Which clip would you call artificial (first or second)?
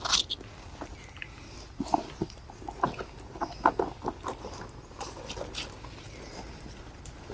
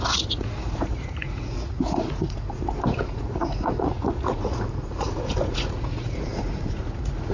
second